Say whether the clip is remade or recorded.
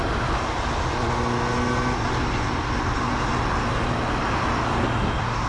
recorded